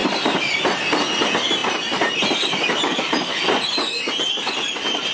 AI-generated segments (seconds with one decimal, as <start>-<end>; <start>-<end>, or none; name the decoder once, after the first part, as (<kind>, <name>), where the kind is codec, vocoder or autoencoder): 0.0-0.9 (vocoder, BigVGAN v2); 1.6-3.4